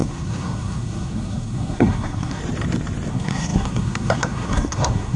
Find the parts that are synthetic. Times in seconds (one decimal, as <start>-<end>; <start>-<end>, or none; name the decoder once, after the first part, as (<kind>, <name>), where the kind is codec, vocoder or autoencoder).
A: 0.0-2.4 (codec, SNAC); 3.1-5.2